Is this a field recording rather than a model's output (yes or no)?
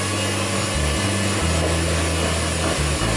yes